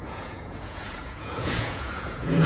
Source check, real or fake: fake